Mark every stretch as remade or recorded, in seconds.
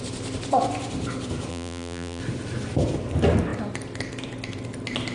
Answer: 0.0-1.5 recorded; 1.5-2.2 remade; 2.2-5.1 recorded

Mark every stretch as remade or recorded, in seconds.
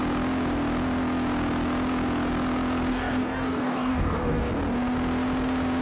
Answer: 0.0-2.9 recorded; 2.9-4.5 remade; 4.5-5.8 recorded